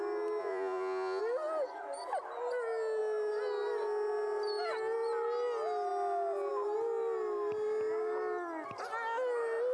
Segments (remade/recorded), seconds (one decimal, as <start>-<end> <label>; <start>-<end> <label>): 0.0-0.4 recorded; 0.4-1.2 remade; 1.2-9.7 recorded